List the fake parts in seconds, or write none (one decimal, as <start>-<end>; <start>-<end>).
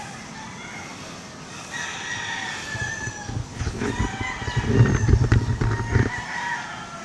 3.4-3.9